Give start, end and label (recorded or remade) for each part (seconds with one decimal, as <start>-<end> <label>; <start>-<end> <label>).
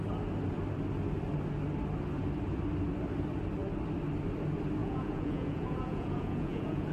0.0-4.8 recorded; 4.8-6.9 remade